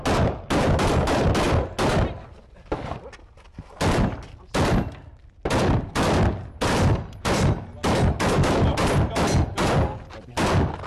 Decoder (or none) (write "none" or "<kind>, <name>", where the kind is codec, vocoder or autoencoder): none